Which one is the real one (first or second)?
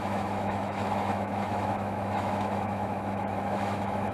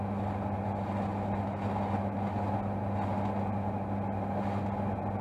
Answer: second